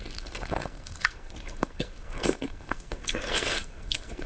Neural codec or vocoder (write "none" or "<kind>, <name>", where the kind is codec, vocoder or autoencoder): codec, SNAC